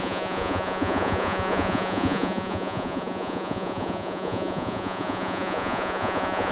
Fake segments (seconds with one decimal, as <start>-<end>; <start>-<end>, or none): 0.0-6.5

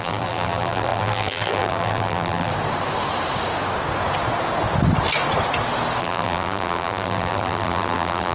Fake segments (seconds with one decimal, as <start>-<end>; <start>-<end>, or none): 0.0-2.5; 6.0-8.3

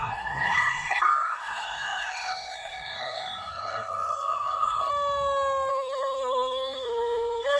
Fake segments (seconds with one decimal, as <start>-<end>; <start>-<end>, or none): 0.0-4.9; 5.7-7.6